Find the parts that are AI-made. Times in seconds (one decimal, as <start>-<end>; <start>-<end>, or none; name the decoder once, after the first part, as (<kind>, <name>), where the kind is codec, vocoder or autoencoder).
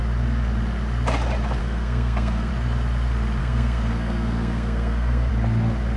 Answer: 1.6-2.5 (codec, SNAC); 3.4-5.3